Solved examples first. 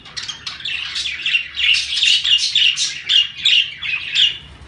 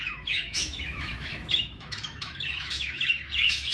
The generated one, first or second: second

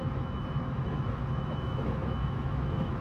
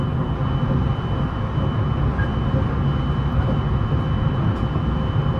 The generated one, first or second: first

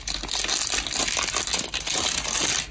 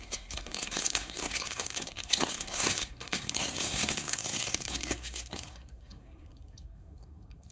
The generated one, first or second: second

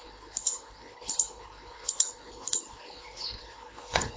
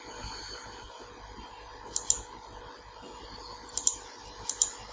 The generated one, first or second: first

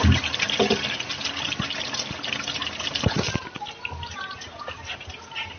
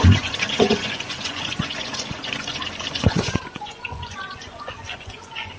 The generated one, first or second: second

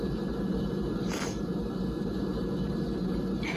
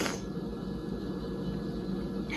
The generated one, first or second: first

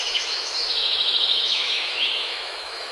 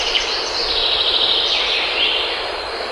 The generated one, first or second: first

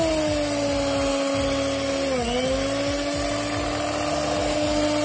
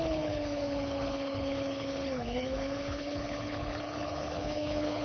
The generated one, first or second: second